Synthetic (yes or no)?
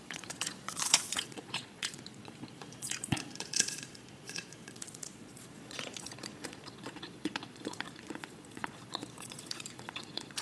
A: yes